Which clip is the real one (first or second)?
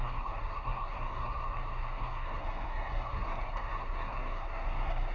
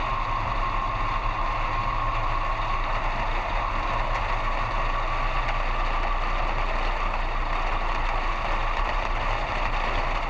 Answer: second